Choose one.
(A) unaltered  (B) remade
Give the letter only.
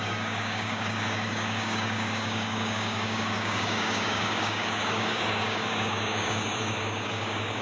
B